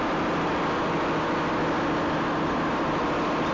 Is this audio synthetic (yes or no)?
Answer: no